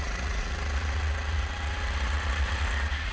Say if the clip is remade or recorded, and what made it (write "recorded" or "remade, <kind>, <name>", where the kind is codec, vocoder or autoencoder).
remade, vocoder, Vocos